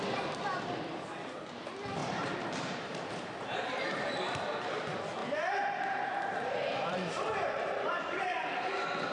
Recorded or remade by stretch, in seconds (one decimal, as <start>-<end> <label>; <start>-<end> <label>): 0.0-2.0 recorded; 2.0-3.7 remade; 3.7-5.2 recorded; 5.2-8.7 remade; 8.7-9.1 recorded